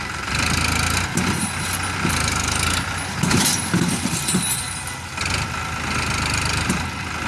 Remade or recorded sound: recorded